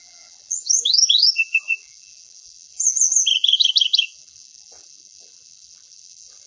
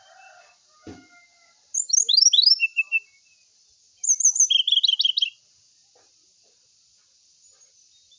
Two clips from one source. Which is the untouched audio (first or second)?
second